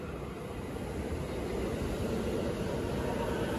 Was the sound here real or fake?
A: real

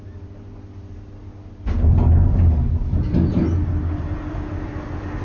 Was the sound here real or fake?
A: real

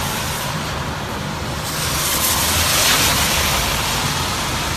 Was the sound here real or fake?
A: real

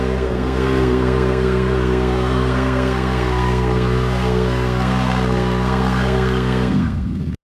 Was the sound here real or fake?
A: fake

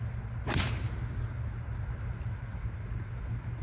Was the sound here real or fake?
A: real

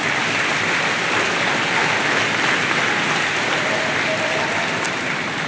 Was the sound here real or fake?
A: real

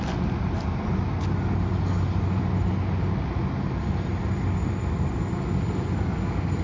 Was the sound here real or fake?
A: real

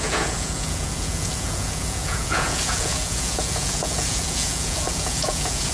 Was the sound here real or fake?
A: fake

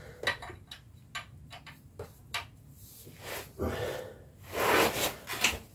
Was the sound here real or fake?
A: real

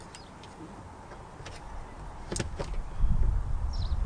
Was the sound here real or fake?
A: real